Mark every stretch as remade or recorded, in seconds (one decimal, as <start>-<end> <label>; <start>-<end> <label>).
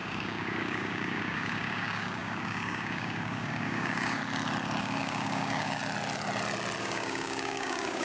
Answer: 0.0-4.2 remade; 4.2-4.8 recorded; 4.8-5.8 remade; 5.8-6.8 recorded; 6.8-8.0 remade